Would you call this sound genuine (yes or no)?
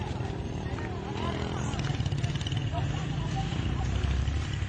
yes